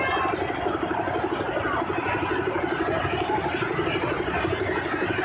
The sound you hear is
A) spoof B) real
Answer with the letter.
B